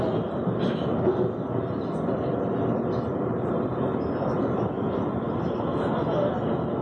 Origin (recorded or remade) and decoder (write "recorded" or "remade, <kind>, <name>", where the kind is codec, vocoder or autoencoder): recorded